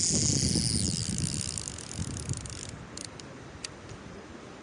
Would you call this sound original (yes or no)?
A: yes